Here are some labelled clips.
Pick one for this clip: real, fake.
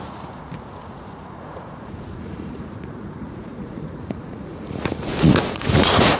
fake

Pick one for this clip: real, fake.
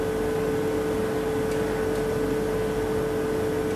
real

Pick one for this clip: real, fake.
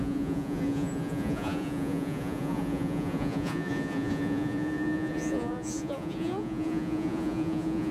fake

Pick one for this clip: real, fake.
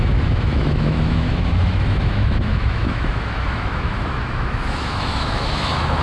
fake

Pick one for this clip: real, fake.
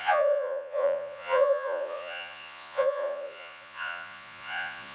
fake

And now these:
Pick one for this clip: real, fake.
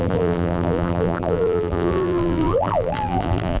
fake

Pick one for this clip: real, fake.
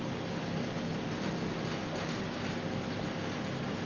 real